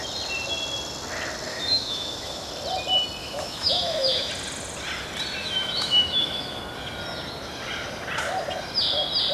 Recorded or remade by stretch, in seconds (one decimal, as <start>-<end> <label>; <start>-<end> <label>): 0.0-1.5 recorded; 1.5-2.5 remade; 2.5-3.2 recorded; 3.2-4.3 remade; 4.3-5.4 recorded; 5.4-6.6 remade; 6.6-9.3 recorded